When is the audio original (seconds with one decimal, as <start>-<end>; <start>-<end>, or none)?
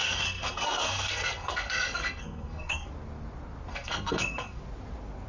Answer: 2.9-3.7; 4.6-5.3